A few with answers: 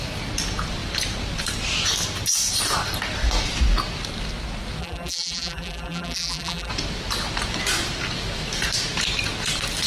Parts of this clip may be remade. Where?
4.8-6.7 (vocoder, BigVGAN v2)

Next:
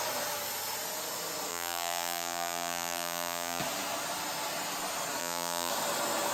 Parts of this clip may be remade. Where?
1.5-3.6 (vocoder, BigVGAN v2); 5.2-5.7